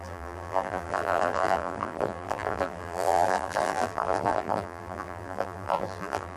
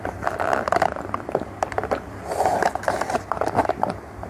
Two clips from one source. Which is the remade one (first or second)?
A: first